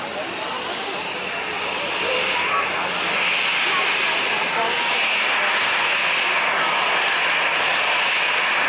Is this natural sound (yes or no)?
yes